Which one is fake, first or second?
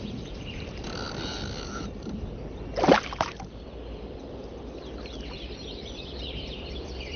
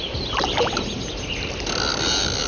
first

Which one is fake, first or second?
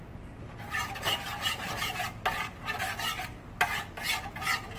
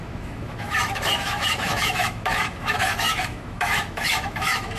second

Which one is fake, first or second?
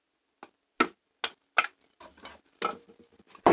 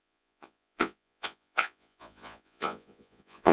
second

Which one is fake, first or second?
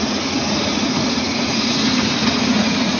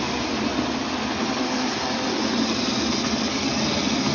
first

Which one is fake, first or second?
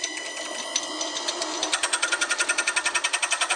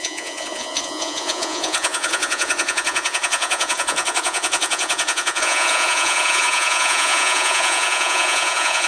second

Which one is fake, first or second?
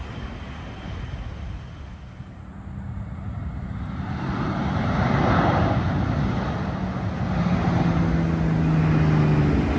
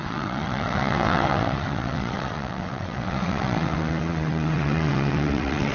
second